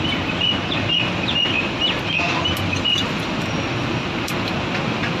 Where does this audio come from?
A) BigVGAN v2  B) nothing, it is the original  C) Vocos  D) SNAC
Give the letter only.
B